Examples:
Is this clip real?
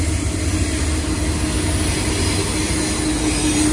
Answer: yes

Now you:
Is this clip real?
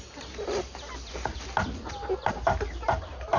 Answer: yes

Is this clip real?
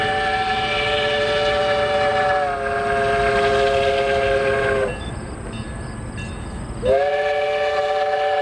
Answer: yes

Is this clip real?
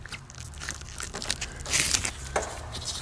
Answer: yes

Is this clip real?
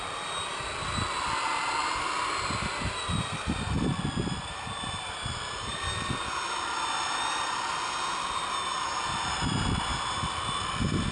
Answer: yes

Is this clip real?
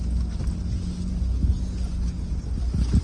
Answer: yes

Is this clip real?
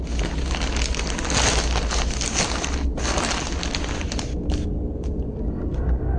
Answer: yes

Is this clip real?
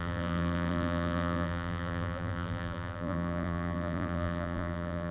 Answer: no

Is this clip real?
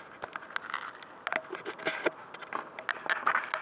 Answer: yes